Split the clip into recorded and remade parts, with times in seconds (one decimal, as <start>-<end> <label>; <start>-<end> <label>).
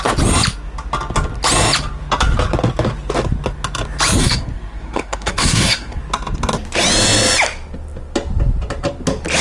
0.0-4.2 recorded; 4.2-6.0 remade; 6.0-9.4 recorded